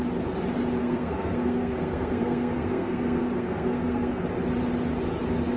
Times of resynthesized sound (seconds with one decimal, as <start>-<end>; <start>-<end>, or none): 0.8-4.2